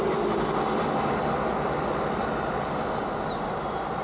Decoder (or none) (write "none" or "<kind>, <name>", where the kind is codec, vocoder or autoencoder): none